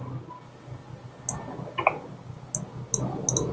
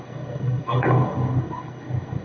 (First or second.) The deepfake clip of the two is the second